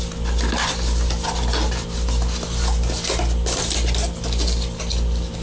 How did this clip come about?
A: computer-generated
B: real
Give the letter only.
B